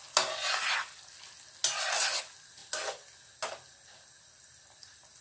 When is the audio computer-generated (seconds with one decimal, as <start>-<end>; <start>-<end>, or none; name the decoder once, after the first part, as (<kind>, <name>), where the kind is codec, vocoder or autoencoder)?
none